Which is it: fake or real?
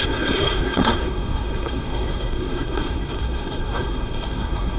fake